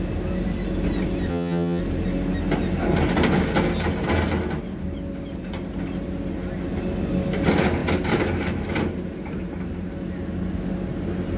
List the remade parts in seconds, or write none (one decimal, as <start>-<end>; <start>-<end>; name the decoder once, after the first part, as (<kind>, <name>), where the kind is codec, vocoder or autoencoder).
1.3-1.8 (vocoder, HiFi-GAN)

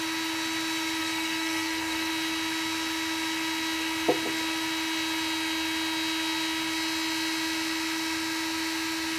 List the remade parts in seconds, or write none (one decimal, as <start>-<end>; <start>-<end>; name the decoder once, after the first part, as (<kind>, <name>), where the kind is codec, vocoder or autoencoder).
1.0-2.1 (codec, SNAC)

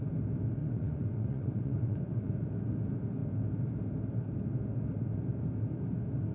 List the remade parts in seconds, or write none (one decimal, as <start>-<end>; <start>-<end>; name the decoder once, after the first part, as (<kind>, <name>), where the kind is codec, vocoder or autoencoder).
0.6-2.3 (vocoder, Vocos)

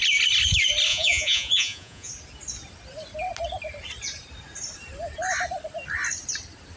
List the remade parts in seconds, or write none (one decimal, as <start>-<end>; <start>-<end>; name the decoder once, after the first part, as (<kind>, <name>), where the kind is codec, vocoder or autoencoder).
0.9-2.1 (vocoder, Vocos)

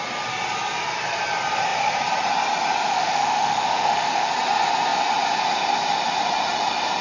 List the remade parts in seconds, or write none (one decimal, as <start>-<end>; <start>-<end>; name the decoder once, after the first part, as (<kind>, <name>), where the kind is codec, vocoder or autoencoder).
2.9-4.3 (autoencoder, DAC-VAE)